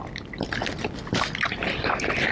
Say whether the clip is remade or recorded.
recorded